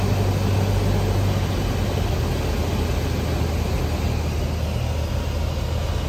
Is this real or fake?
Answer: real